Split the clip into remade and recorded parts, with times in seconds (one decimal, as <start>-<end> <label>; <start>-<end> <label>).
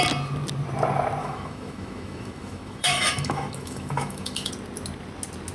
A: 0.0-1.2 recorded; 1.2-4.5 remade; 4.5-5.5 recorded